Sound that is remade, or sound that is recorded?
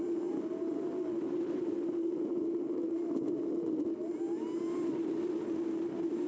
recorded